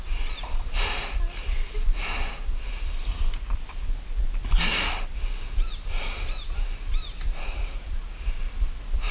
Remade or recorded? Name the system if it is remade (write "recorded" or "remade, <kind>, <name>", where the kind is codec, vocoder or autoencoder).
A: recorded